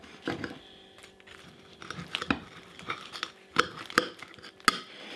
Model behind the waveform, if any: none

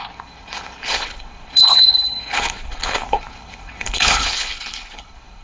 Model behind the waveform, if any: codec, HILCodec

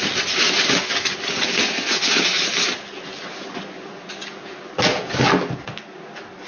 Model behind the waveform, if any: none